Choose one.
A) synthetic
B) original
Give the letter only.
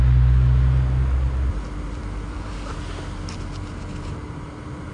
B